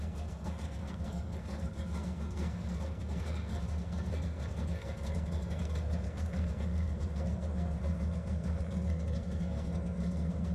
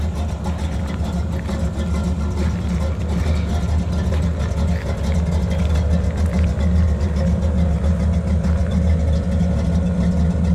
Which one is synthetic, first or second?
first